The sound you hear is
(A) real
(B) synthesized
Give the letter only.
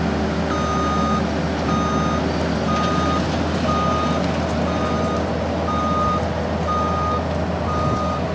A